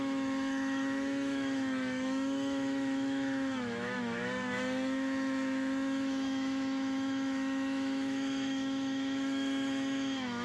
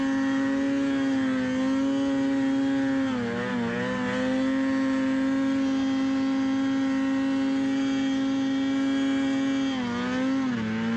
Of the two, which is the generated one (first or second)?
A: first